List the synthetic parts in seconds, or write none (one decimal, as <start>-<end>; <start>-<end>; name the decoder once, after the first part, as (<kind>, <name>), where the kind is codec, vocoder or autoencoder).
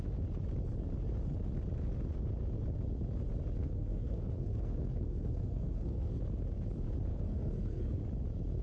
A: 3.6-6.2 (codec, SNAC); 7.1-8.0